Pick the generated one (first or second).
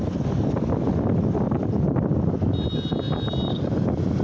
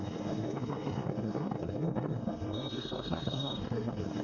second